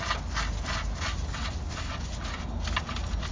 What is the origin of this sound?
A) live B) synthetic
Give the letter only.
A